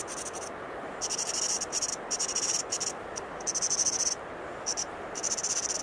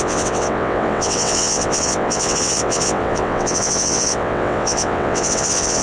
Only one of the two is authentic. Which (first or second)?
first